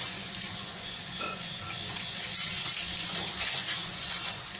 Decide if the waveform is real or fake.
fake